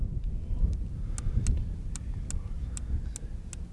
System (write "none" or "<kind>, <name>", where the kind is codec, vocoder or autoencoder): none